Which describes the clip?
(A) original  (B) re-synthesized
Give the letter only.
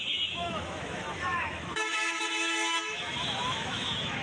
B